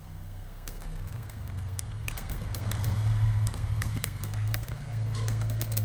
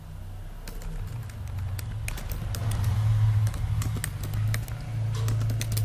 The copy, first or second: first